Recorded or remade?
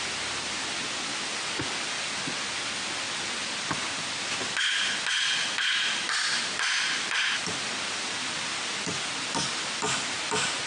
recorded